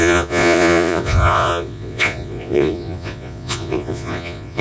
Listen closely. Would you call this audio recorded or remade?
remade